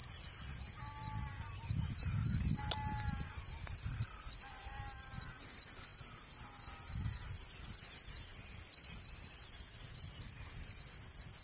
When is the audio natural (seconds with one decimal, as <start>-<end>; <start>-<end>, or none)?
0.0-4.6; 5.4-8.3; 9.5-11.4